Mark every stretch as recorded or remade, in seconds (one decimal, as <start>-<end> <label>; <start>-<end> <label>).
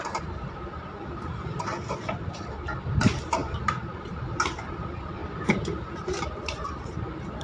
0.0-3.4 recorded; 3.4-4.7 remade; 4.7-5.2 recorded; 5.2-6.8 remade; 6.8-7.4 recorded